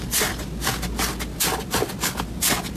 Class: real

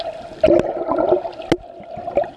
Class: real